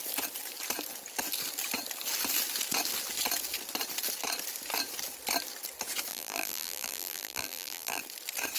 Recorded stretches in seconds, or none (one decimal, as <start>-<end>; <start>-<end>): 0.0-6.1; 8.0-8.6